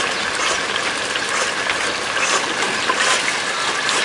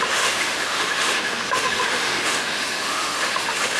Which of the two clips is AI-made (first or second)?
second